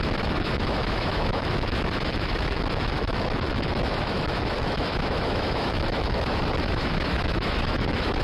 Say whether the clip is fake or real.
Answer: fake